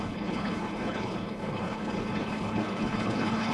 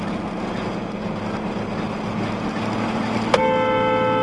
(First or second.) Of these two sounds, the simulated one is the first